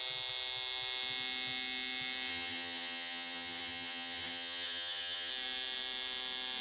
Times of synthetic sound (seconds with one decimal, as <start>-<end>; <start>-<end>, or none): 2.3-5.3